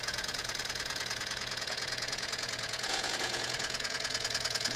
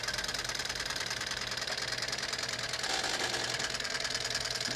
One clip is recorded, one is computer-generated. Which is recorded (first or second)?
second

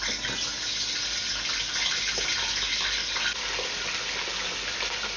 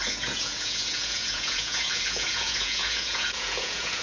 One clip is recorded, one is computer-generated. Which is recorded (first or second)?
first